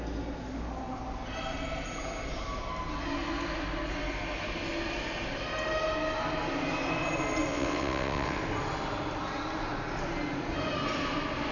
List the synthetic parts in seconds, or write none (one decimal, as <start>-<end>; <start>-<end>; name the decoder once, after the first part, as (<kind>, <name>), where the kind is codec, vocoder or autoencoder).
7.5-8.4 (vocoder, WaveNeXt)